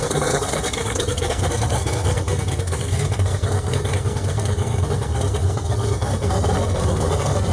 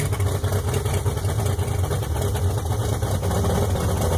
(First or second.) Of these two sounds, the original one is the second